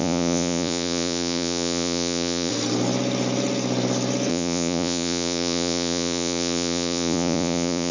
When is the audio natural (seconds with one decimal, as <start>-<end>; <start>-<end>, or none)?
2.5-4.3